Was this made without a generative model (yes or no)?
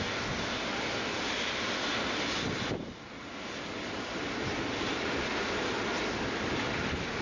yes